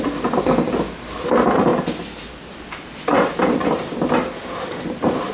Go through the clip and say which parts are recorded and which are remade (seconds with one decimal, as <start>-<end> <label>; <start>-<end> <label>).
0.0-5.3 recorded